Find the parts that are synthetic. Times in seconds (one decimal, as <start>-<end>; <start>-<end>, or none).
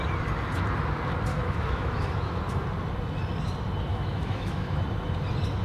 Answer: 1.3-2.4; 3.9-4.8